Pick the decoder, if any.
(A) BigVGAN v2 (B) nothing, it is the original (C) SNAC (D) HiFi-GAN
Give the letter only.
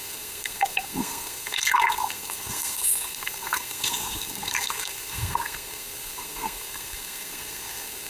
C